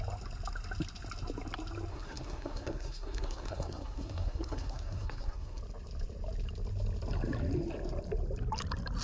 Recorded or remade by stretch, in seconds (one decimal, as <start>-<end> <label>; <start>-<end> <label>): 0.0-1.9 recorded; 1.9-5.6 remade; 5.6-9.0 recorded